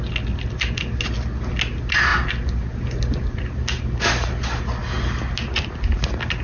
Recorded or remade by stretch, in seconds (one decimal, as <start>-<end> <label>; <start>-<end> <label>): 0.0-6.4 recorded